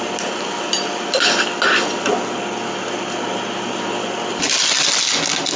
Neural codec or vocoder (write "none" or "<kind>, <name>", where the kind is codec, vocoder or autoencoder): none